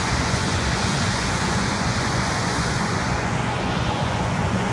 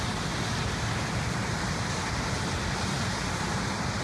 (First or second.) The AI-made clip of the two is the first